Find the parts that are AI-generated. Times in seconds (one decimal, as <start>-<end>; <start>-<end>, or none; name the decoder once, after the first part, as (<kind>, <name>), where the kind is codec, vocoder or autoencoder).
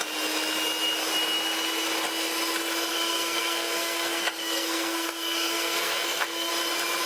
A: 2.9-6.5 (codec, SNAC)